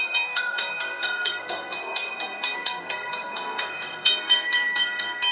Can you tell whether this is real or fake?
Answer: fake